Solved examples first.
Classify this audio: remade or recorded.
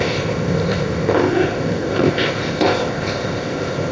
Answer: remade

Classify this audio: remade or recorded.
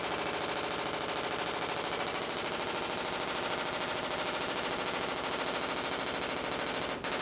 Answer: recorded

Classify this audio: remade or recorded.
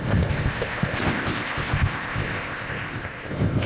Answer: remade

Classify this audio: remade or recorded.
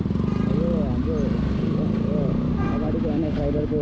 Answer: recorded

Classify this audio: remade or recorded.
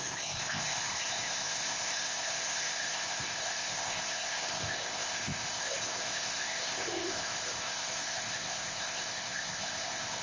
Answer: remade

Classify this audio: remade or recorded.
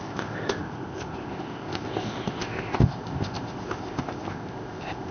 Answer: remade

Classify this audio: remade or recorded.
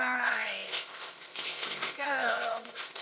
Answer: remade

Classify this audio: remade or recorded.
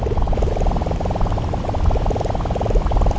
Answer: recorded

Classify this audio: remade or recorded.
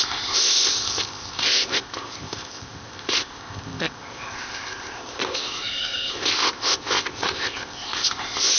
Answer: remade